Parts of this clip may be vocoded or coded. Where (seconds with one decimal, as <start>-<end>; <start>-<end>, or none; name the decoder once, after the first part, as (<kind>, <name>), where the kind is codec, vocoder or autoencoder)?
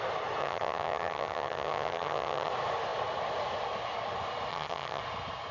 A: 0.4-2.5 (vocoder, HiFi-GAN); 4.5-5.0